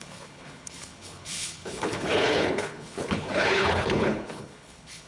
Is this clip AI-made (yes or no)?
yes